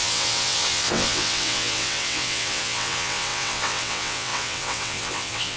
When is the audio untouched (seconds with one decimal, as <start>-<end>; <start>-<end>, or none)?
none